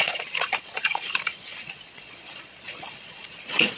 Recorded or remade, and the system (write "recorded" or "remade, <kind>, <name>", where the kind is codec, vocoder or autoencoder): remade, vocoder, Vocos